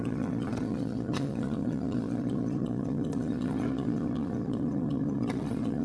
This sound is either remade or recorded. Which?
remade